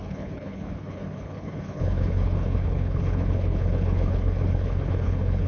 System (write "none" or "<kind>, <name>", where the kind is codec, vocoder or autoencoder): codec, HILCodec